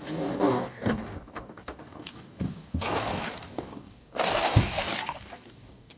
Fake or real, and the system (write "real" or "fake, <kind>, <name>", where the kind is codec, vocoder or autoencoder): fake, codec, DAC